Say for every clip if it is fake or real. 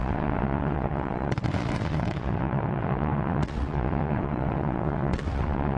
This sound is fake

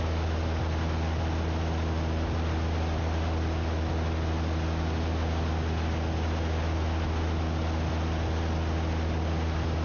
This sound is real